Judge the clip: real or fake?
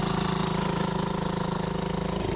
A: real